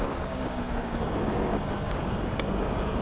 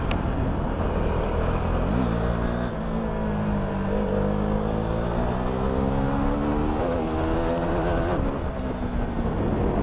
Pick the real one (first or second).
second